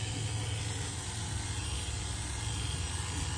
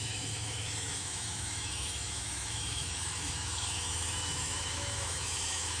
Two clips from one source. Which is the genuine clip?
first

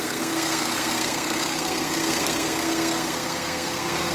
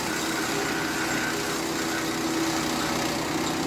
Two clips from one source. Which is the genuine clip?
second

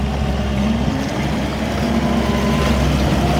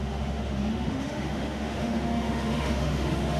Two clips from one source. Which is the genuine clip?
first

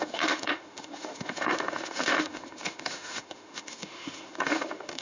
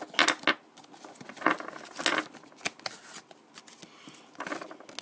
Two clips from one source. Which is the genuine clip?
second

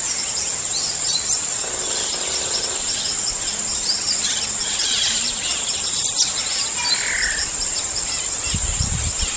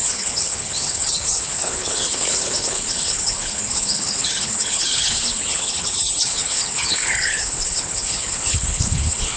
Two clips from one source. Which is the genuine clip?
first